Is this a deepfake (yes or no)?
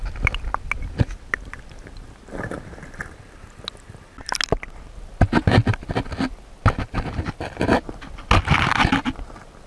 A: no